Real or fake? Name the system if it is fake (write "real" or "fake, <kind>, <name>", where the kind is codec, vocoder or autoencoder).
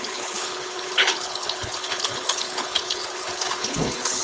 fake, codec, HILCodec